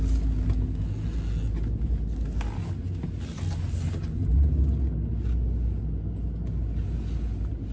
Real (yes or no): yes